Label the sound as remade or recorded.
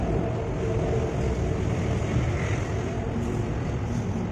recorded